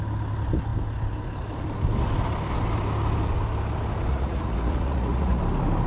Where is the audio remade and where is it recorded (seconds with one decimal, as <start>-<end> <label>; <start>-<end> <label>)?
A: 0.0-4.1 recorded; 4.1-5.4 remade; 5.4-5.9 recorded